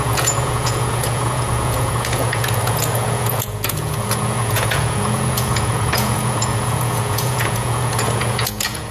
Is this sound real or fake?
fake